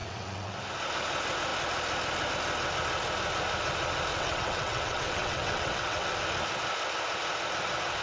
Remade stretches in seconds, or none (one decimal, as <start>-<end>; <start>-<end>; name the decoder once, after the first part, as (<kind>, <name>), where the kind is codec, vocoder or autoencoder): 0.0-0.6 (vocoder, WaveNeXt); 4.1-6.1